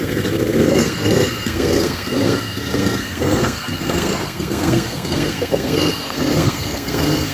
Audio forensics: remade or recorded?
remade